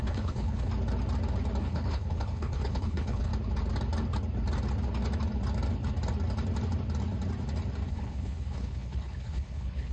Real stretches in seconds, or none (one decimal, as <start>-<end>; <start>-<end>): 0.7-1.6; 3.3-7.9